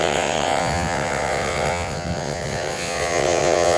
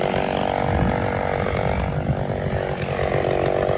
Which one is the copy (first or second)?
first